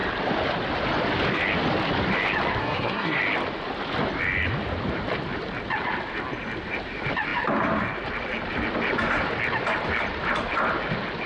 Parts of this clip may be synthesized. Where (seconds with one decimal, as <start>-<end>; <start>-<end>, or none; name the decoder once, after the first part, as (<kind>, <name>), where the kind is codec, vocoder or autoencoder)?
2.6-3.2 (codec, SNAC)